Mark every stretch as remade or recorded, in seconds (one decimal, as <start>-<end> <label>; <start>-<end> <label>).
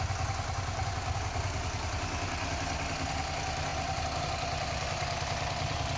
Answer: 0.0-6.0 recorded